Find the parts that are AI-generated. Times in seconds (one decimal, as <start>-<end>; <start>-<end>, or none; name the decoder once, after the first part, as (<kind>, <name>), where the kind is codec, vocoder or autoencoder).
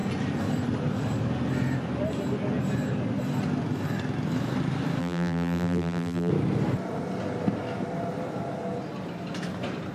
5.0-6.3 (vocoder, BigVGAN v2)